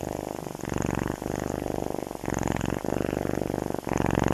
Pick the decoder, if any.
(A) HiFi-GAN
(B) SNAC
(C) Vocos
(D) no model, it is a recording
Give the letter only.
D